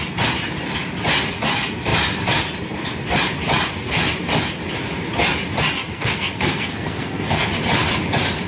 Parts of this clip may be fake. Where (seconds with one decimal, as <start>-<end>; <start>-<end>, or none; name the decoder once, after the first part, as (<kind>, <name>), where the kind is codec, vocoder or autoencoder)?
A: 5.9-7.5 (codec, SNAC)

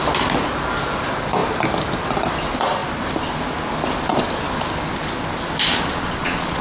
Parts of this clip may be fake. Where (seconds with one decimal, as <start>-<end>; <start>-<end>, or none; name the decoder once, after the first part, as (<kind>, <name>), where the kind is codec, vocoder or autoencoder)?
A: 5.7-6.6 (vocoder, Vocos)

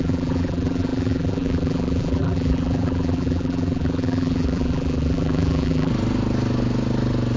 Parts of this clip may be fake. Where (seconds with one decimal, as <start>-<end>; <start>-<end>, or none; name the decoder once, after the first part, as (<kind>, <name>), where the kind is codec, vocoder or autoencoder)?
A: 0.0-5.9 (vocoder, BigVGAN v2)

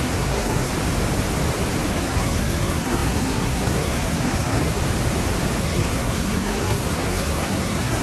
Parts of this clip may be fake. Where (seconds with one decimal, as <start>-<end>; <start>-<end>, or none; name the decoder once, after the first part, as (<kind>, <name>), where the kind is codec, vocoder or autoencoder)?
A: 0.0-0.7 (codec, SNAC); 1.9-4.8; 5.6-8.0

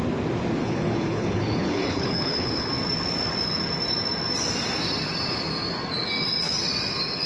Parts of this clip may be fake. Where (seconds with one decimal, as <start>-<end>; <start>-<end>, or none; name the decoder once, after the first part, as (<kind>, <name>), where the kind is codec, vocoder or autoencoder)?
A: 0.6-2.7 (codec, HILCodec)

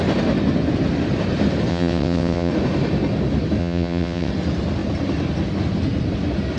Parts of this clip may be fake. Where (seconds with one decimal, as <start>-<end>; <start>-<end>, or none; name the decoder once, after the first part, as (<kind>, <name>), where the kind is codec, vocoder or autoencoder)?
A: 1.7-2.5 (vocoder, WaveNeXt); 3.6-4.3